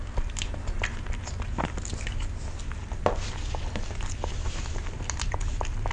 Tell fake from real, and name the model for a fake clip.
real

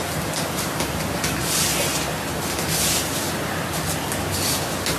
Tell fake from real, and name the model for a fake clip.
real